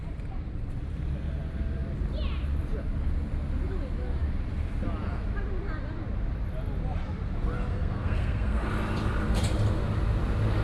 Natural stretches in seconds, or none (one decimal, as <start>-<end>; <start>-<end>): 0.0-7.7; 8.7-10.6